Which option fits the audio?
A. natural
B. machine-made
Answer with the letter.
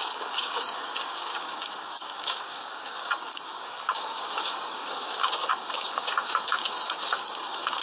B